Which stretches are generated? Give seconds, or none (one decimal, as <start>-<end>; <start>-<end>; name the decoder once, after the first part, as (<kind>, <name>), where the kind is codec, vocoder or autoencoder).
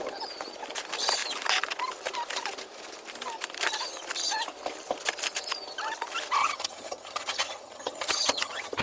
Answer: 6.4-8.8 (vocoder, HiFi-GAN)